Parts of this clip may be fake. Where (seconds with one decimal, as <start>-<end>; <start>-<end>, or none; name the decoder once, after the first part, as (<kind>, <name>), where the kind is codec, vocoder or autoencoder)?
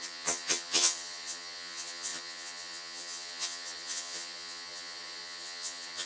0.0-6.1 (vocoder, HiFi-GAN)